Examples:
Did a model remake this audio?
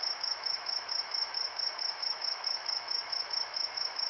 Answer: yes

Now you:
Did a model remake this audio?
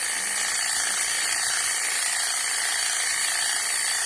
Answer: no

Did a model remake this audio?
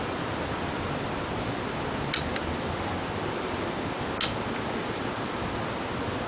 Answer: no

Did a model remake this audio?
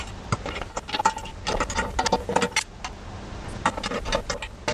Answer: no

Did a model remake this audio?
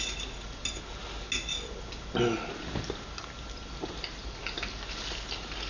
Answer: no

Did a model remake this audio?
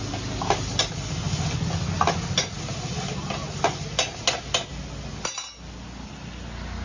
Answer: no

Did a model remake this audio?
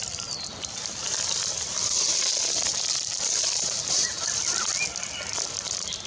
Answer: no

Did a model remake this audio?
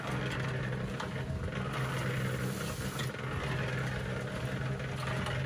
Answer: no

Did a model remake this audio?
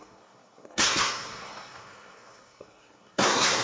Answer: yes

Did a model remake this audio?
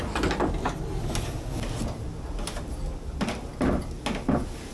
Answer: no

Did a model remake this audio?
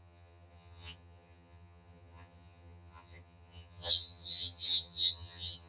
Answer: yes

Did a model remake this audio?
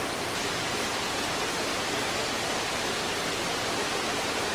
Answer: no